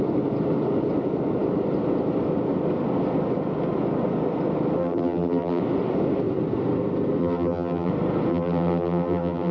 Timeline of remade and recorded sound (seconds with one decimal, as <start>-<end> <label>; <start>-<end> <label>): 0.0-4.8 recorded; 4.8-5.6 remade; 5.6-7.2 recorded; 7.2-7.9 remade; 7.9-8.3 recorded; 8.3-9.5 remade